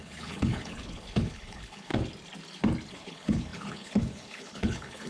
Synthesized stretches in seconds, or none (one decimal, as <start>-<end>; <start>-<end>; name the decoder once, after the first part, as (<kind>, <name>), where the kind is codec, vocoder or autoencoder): 0.0-1.9 (codec, HILCodec); 2.9-5.1